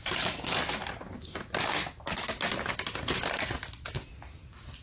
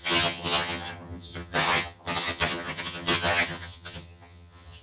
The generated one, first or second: second